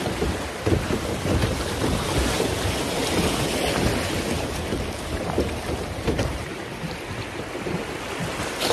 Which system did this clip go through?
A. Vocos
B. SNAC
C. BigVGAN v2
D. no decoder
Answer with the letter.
D